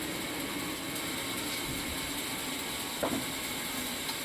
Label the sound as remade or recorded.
recorded